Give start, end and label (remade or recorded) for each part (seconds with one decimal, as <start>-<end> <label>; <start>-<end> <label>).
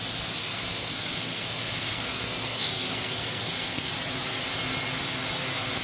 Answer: 0.0-0.4 recorded; 0.4-3.9 remade; 3.9-5.8 recorded